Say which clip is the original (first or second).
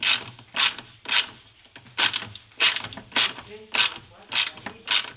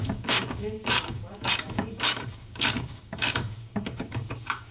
first